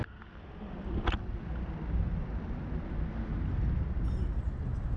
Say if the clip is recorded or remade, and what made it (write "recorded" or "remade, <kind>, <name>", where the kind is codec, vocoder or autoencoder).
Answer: recorded